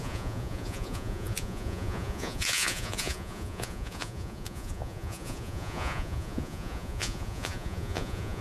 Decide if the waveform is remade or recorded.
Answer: remade